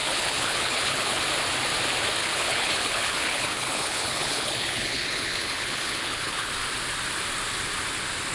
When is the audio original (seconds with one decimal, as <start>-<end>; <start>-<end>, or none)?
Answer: 1.2-2.2; 6.5-8.3